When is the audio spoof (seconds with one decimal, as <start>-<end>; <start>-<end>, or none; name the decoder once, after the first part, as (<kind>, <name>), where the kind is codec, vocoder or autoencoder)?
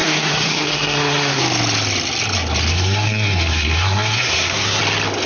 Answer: 0.0-1.4 (codec, SNAC); 2.7-4.8